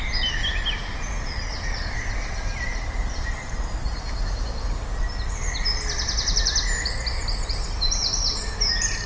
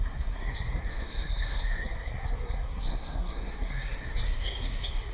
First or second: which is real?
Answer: first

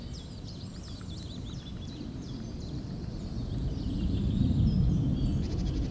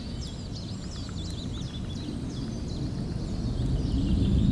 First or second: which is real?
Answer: second